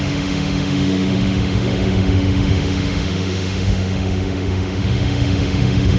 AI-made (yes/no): yes